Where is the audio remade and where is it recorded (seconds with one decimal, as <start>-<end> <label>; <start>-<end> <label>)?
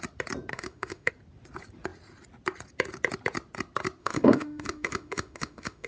0.0-0.5 recorded; 0.5-1.1 remade; 1.1-4.0 recorded; 4.0-5.9 remade